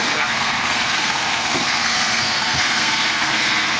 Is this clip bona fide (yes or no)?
no